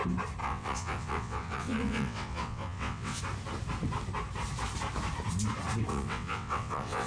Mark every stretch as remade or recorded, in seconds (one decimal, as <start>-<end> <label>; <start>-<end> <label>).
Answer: 0.0-0.4 recorded; 0.4-3.2 remade; 3.2-5.9 recorded; 5.9-7.1 remade